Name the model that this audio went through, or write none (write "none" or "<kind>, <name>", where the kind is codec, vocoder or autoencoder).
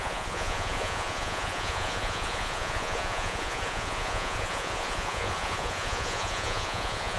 vocoder, Vocos